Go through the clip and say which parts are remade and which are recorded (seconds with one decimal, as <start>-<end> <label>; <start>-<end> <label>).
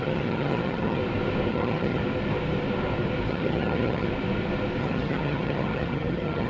0.0-1.0 remade; 1.0-1.5 recorded; 1.5-2.0 remade; 2.0-3.3 recorded; 3.3-4.1 remade; 4.1-4.8 recorded; 4.8-6.5 remade